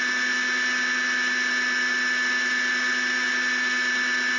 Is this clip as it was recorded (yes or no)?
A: yes